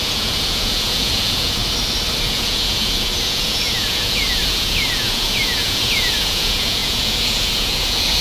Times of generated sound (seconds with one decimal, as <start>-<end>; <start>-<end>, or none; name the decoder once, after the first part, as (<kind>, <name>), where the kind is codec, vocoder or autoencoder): 0.0-1.6 (vocoder, Vocos); 2.2-8.2